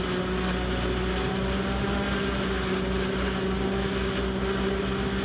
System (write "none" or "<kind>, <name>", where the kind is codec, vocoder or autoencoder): none